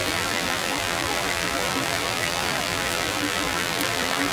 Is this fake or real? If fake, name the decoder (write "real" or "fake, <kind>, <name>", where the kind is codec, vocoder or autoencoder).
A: fake, vocoder, BigVGAN v2